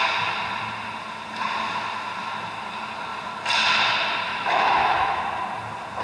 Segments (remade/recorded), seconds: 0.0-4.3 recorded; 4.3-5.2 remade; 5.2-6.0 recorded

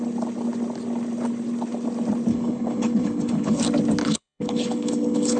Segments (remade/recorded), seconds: 0.0-2.3 recorded; 2.3-3.6 remade; 3.6-4.0 recorded; 4.0-5.4 remade

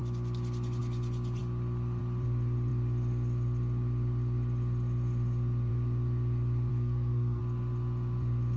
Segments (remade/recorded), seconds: 0.0-6.7 recorded; 6.7-7.4 remade; 7.4-8.6 recorded

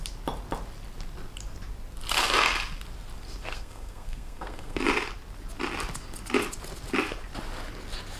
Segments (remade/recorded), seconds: 0.0-3.4 recorded; 3.4-4.8 remade; 4.8-8.2 recorded

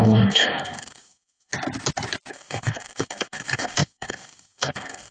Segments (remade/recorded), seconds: 0.0-1.5 remade; 1.5-2.3 recorded; 2.3-5.1 remade

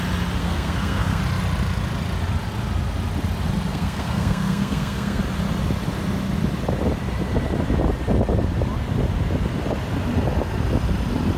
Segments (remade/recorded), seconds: 0.0-0.4 recorded; 0.4-1.2 remade; 1.2-3.7 recorded; 3.7-5.2 remade; 5.2-11.4 recorded